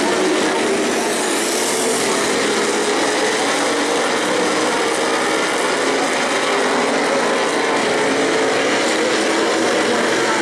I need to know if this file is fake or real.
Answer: real